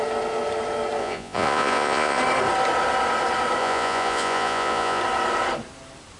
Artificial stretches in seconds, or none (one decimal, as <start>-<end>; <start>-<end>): 1.0-2.2; 3.6-5.0

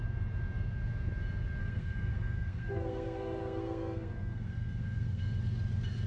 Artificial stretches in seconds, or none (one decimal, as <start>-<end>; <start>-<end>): 1.6-5.3